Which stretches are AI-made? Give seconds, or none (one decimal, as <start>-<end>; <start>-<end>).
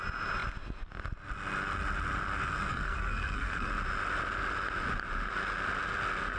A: 2.7-3.7